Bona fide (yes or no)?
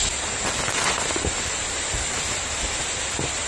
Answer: yes